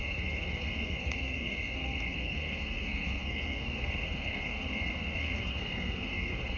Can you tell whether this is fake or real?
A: fake